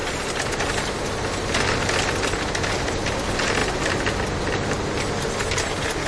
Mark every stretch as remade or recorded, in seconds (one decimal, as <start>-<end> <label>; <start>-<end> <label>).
0.0-6.1 recorded